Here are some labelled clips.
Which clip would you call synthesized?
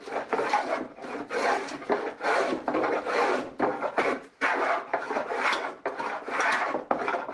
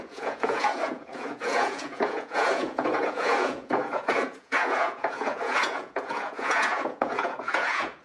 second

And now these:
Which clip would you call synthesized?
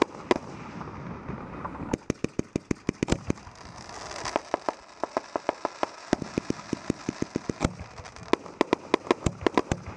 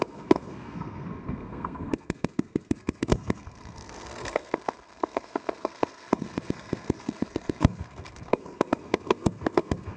second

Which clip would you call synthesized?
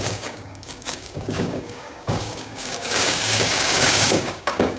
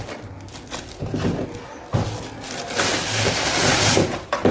first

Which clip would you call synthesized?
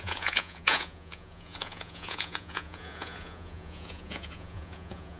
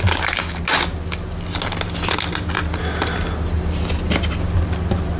first